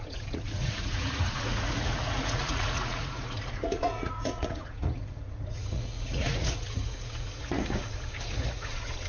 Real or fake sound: fake